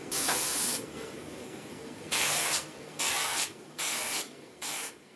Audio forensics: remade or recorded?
remade